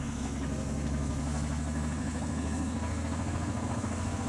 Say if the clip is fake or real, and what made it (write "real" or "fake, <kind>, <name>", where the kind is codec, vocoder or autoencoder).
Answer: fake, codec, SNAC